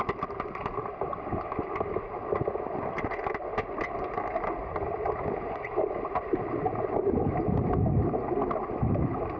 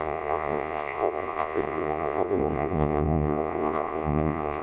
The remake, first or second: second